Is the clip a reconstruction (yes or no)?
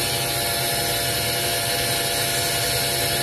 no